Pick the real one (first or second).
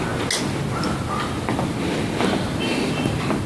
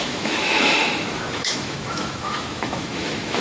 first